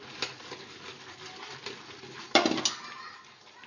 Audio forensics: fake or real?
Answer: real